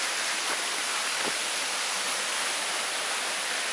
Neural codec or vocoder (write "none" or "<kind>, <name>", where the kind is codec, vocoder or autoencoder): none